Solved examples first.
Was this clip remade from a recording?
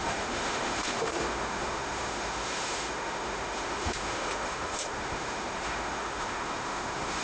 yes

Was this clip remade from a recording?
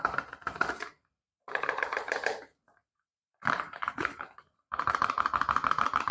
yes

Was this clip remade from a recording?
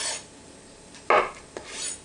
no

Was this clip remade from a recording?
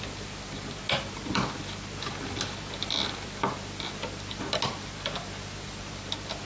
no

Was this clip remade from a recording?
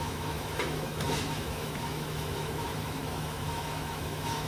yes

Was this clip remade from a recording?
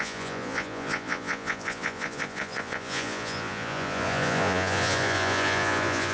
yes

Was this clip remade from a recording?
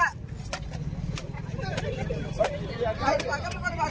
no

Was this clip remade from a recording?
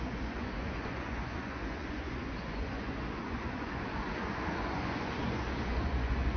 yes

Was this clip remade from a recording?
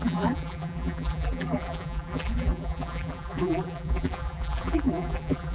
yes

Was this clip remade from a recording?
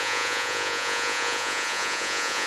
yes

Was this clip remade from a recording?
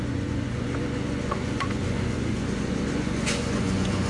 yes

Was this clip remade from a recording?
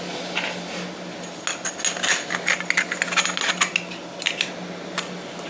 no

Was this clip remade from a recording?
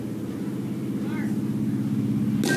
no